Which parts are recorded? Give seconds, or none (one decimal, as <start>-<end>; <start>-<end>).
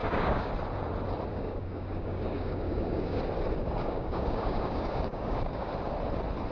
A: 0.5-1.3; 3.2-3.6; 5.7-6.5